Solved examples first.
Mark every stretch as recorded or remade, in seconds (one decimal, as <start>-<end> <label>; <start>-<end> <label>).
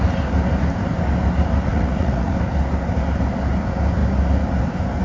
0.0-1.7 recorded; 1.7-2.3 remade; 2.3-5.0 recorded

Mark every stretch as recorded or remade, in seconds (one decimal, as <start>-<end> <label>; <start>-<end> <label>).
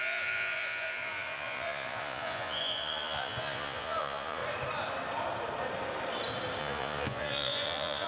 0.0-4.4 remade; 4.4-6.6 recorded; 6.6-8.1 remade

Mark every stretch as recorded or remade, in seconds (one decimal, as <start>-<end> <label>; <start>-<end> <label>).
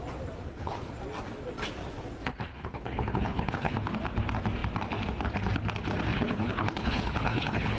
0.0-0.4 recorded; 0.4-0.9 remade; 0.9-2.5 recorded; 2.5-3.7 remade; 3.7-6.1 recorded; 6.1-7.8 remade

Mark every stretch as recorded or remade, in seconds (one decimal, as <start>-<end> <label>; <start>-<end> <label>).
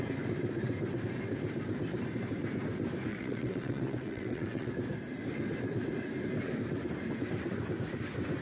0.0-3.1 recorded; 3.1-4.7 remade; 4.7-8.4 recorded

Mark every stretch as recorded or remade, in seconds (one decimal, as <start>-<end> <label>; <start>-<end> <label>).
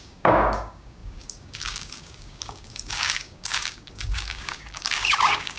0.0-5.6 remade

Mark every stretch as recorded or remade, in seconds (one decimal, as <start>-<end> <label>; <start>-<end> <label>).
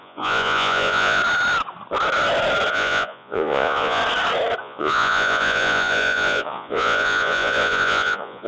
0.0-1.2 remade; 1.2-2.7 recorded; 2.7-4.0 remade; 4.0-4.6 recorded; 4.6-8.5 remade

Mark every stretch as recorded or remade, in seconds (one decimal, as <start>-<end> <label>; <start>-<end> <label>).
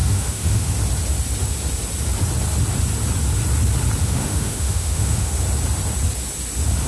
0.0-0.7 remade; 0.7-4.0 recorded; 4.0-5.3 remade; 5.3-6.9 recorded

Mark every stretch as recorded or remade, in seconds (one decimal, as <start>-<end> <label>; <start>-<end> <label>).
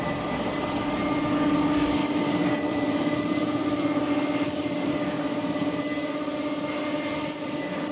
0.0-2.0 recorded; 2.0-4.1 remade; 4.1-7.9 recorded